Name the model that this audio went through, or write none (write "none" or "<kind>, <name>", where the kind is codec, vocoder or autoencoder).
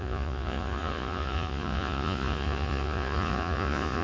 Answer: vocoder, Vocos